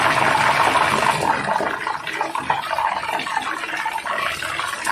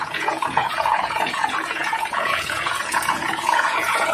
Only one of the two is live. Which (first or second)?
first